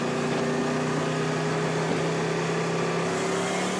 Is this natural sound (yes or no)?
yes